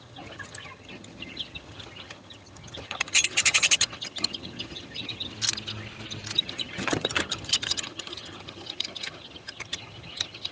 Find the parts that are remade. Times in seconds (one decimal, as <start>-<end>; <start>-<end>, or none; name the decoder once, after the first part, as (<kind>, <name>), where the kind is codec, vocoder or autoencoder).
0.0-5.3 (vocoder, HiFi-GAN); 6.4-10.5